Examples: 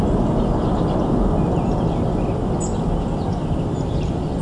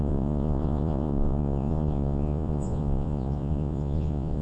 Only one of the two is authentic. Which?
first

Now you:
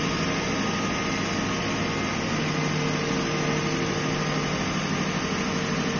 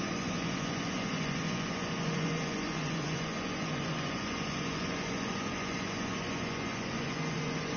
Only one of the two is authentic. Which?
first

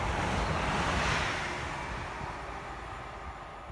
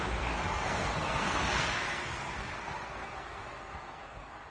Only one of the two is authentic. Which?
first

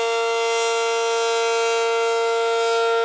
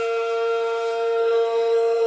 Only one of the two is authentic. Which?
first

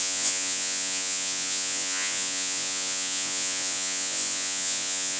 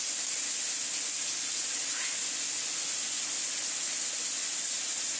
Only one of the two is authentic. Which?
second